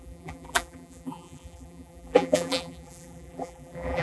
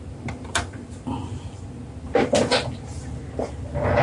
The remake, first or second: first